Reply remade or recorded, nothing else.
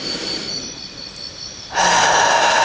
recorded